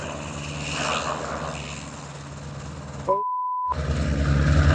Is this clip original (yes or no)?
yes